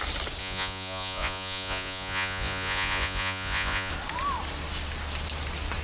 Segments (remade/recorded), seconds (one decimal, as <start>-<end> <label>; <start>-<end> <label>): 0.0-0.4 recorded; 0.4-3.9 remade; 3.9-5.8 recorded